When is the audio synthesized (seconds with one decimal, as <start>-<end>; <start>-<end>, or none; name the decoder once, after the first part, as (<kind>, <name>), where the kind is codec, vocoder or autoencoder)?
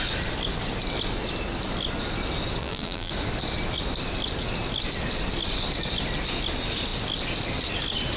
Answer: 2.6-3.1 (vocoder, BigVGAN v2)